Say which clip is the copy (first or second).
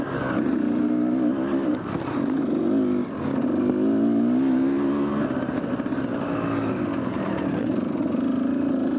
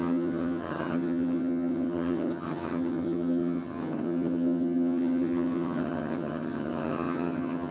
second